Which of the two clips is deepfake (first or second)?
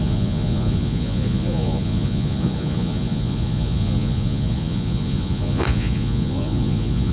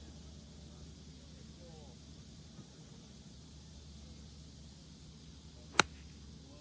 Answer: first